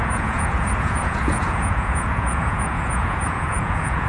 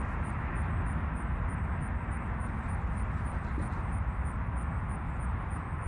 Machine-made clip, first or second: first